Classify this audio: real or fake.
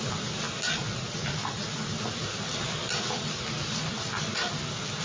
real